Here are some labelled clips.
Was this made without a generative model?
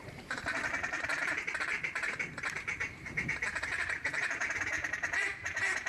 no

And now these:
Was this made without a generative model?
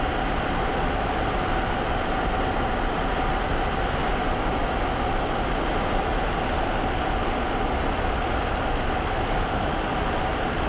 yes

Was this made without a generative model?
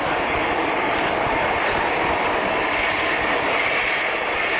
yes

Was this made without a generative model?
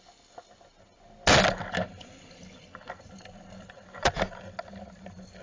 yes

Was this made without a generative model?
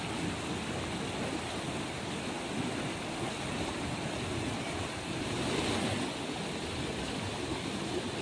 yes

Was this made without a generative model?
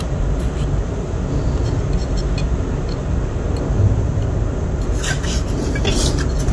yes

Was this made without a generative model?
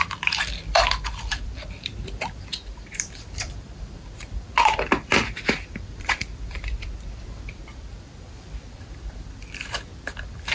no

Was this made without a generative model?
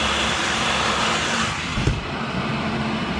no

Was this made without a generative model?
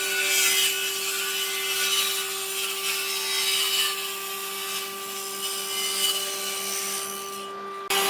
yes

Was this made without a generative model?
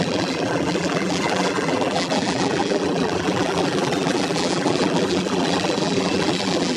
no